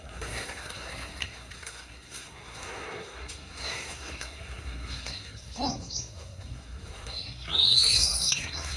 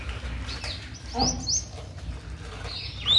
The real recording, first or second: second